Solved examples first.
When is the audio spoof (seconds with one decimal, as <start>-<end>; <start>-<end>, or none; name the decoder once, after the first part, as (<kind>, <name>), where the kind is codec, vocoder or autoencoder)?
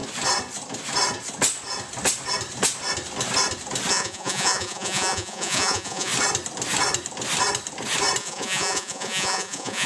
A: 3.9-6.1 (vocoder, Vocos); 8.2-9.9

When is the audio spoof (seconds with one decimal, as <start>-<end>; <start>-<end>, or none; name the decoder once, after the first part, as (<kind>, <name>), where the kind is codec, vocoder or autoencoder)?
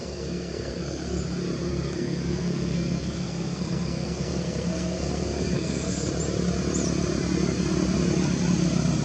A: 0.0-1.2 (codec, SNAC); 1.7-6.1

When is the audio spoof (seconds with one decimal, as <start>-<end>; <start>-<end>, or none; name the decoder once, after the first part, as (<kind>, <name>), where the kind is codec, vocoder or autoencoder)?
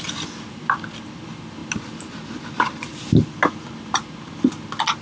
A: none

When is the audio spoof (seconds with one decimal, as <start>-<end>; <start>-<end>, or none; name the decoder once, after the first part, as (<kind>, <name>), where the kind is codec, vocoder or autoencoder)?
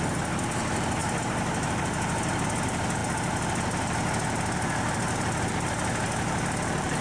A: none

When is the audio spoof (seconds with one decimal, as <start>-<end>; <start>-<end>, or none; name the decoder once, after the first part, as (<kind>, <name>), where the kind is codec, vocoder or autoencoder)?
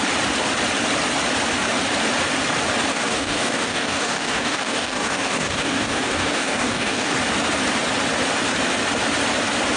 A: 2.9-7.1 (codec, DAC)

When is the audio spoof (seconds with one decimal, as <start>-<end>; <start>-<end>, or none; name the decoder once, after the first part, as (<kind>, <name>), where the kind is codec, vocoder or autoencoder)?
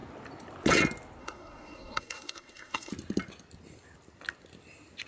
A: 1.2-2.9 (codec, SNAC)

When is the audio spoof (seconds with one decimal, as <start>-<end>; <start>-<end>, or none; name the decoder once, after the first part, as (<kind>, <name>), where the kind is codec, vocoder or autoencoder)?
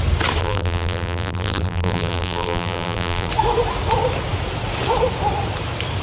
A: 0.4-3.3 (vocoder, BigVGAN v2)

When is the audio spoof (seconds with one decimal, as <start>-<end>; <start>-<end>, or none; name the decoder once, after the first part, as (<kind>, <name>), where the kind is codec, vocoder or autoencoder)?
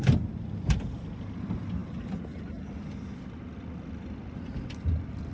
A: none